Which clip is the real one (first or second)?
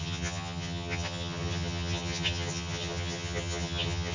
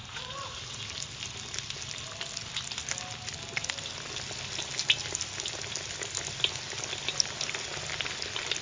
second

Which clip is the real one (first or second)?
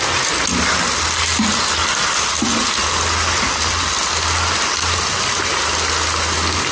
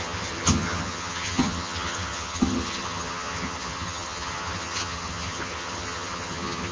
first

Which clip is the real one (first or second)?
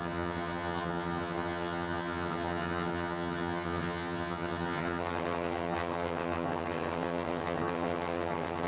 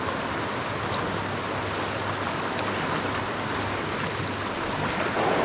second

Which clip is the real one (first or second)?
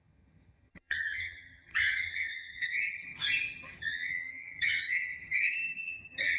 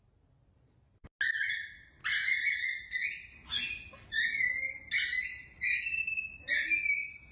second